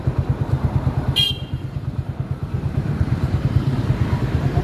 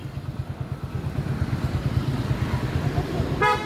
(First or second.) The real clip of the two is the second